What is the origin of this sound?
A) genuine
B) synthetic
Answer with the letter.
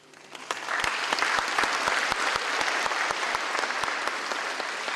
A